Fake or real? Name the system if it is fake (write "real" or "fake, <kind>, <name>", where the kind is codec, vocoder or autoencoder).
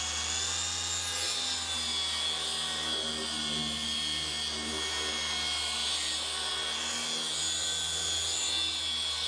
real